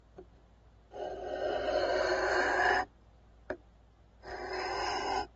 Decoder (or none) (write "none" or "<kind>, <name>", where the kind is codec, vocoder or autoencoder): none